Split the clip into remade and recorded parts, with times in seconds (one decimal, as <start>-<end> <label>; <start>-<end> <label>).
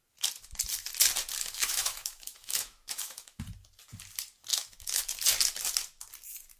0.0-1.4 recorded; 1.4-3.4 remade; 3.4-4.5 recorded; 4.5-5.0 remade; 5.0-6.6 recorded